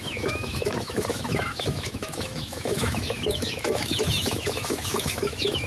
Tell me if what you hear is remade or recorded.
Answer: remade